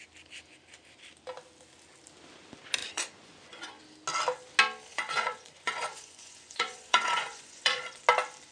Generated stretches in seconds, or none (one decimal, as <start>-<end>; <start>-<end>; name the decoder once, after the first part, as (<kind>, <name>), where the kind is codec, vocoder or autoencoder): 2.8-3.8 (vocoder, Vocos); 4.9-8.0